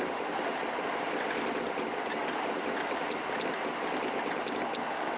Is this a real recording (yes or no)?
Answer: yes